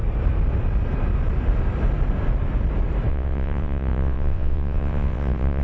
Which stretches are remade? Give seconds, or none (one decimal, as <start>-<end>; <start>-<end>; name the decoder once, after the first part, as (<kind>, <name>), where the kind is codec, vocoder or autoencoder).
3.1-5.6 (vocoder, WaveNeXt)